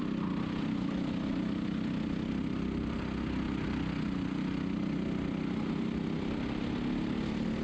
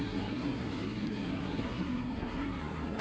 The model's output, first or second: second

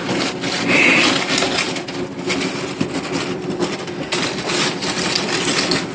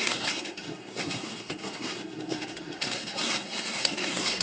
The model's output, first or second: second